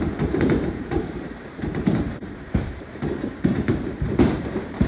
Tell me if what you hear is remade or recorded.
remade